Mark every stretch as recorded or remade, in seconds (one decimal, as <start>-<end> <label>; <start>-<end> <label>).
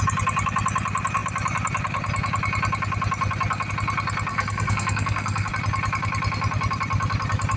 0.0-4.3 recorded; 4.3-5.5 remade; 5.5-7.6 recorded